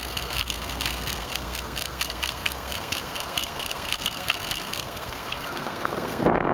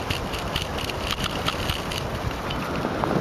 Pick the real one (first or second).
second